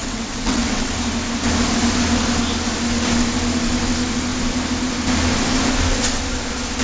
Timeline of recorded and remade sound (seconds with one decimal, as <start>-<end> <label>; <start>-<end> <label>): 0.0-0.9 remade; 0.9-6.8 recorded